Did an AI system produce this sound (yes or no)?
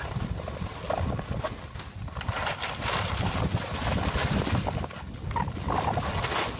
no